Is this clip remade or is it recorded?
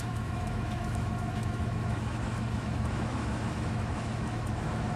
remade